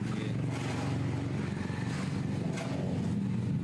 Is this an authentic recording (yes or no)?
yes